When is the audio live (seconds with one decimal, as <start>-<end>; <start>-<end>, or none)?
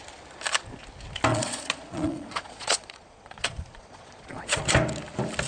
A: 0.0-1.3; 4.6-5.5